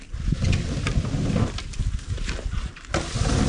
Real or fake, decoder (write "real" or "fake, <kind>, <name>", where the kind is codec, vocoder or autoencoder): real